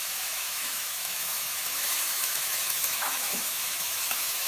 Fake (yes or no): yes